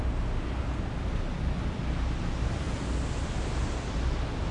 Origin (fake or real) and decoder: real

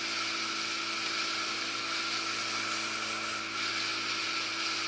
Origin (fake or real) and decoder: real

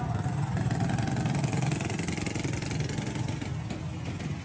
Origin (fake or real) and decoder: real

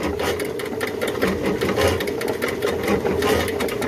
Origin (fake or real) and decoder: real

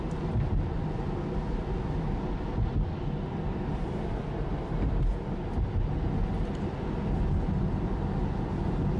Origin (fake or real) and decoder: real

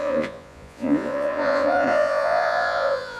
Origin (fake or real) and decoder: fake, vocoder, Vocos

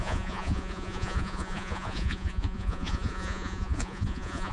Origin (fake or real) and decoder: fake, vocoder, Vocos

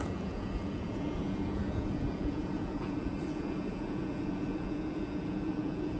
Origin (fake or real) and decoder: fake, vocoder, Vocos